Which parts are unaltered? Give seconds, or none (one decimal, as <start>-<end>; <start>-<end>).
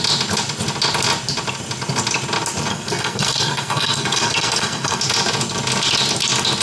0.0-2.7; 5.0-6.6